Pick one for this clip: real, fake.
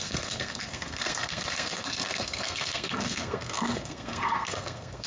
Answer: fake